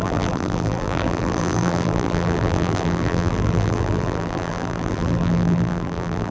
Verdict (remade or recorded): remade